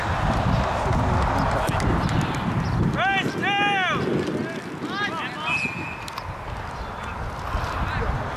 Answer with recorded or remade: recorded